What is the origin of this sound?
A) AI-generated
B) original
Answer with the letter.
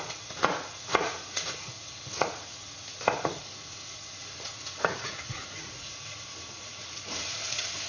A